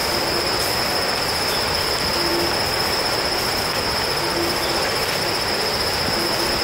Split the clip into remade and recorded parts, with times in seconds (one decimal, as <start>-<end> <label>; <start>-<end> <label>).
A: 0.0-0.8 remade; 0.8-6.6 recorded

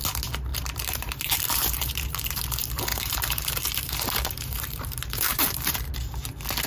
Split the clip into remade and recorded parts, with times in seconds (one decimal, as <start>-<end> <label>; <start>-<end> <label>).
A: 0.0-0.5 recorded; 0.5-2.4 remade; 2.4-2.9 recorded; 2.9-5.9 remade; 5.9-6.7 recorded

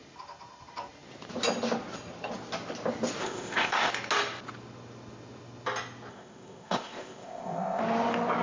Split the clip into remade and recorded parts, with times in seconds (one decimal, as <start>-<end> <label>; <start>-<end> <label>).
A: 0.0-3.2 recorded; 3.2-3.9 remade; 3.9-6.1 recorded; 6.1-7.8 remade; 7.8-8.4 recorded

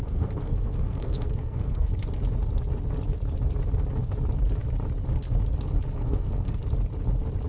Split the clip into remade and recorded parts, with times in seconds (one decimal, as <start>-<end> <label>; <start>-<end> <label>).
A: 0.0-1.9 remade; 1.9-5.9 recorded; 5.9-6.6 remade; 6.6-7.5 recorded

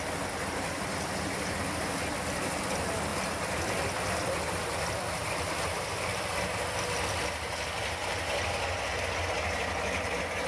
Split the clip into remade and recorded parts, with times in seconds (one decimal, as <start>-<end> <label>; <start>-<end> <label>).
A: 0.0-10.5 recorded

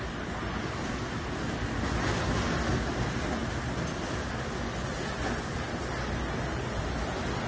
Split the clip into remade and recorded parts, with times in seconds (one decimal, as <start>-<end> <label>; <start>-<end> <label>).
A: 0.0-7.5 recorded

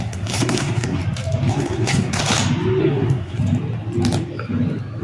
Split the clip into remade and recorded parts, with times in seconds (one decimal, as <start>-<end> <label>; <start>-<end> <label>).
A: 0.0-1.0 remade; 1.0-1.5 recorded; 1.5-2.2 remade; 2.2-2.8 recorded; 2.8-3.4 remade; 3.4-5.0 recorded

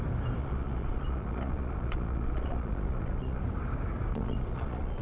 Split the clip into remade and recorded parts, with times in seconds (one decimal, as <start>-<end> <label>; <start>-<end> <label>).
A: 0.0-0.4 recorded; 0.4-3.4 remade; 3.4-4.1 recorded; 4.1-5.0 remade